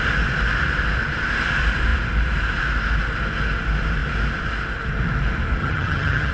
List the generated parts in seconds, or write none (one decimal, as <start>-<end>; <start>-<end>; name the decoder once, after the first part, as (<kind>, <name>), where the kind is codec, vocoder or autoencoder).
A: 5.6-6.3 (vocoder, HiFi-GAN)